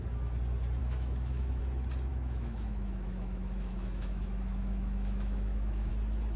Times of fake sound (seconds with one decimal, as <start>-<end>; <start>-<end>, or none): 0.8-1.6; 2.1-5.9